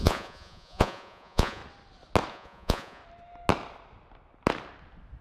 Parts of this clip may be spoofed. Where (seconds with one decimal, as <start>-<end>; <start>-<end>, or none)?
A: 0.0-1.6; 2.3-3.0